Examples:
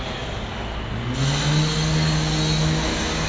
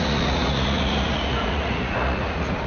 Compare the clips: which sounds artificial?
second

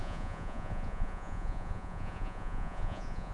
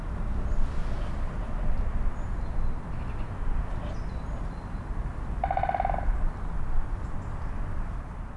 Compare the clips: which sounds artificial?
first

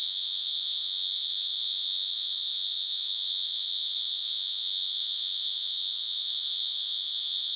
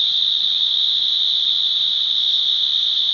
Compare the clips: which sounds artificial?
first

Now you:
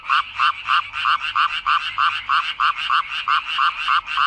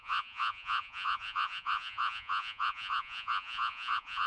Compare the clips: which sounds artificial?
second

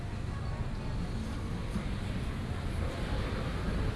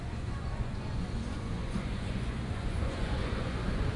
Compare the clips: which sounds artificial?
second